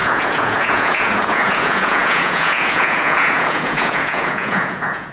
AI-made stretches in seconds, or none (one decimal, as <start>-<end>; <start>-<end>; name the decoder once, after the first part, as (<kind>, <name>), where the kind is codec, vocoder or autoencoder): 0.0-5.1 (vocoder, Vocos)